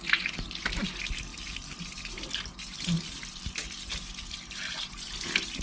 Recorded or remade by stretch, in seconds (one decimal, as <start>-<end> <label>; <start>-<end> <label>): 0.0-5.6 recorded